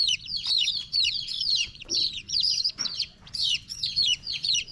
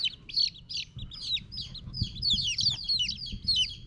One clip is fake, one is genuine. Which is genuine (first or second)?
second